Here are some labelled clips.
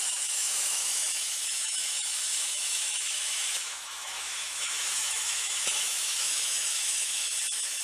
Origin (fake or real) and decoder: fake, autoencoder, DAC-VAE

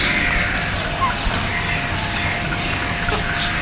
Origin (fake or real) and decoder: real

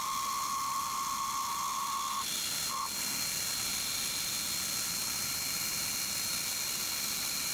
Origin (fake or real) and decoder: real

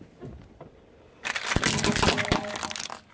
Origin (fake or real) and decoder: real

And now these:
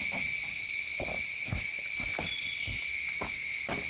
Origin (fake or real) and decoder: real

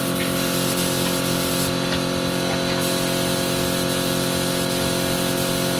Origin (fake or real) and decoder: real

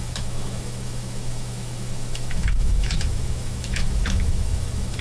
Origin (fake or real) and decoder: fake, autoencoder, DAC-VAE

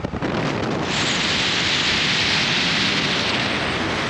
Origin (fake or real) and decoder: real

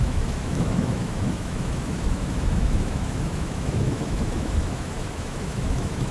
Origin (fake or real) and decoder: fake, autoencoder, DAC-VAE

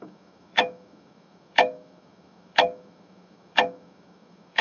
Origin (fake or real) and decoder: fake, autoencoder, DAC-VAE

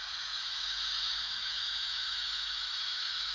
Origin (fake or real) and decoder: fake, autoencoder, DAC-VAE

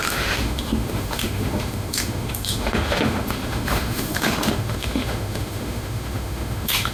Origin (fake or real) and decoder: fake, autoencoder, DAC-VAE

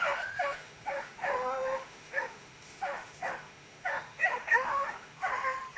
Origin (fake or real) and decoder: fake, autoencoder, DAC-VAE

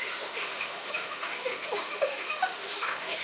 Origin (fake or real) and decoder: fake, autoencoder, DAC-VAE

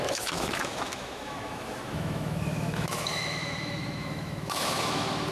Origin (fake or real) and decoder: fake, autoencoder, DAC-VAE